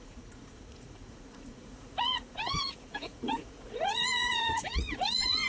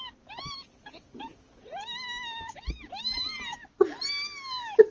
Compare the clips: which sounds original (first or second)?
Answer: second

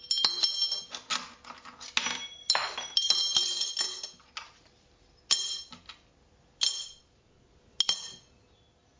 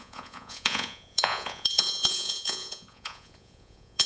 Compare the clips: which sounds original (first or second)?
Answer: first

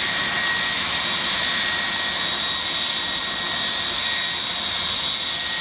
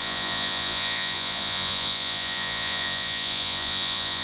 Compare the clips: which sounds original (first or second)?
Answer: first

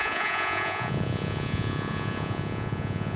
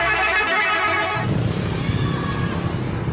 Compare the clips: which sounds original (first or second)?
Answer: second